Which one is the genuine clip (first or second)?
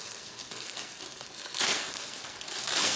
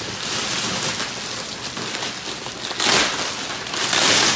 second